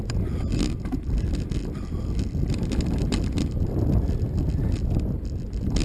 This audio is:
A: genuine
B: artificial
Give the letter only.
A